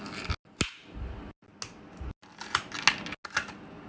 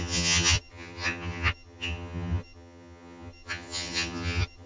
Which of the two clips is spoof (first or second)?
second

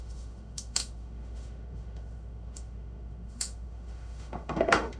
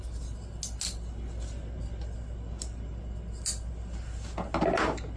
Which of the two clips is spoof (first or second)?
first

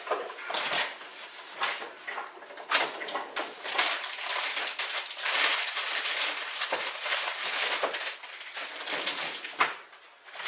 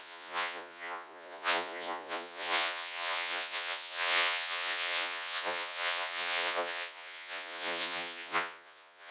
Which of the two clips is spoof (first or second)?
second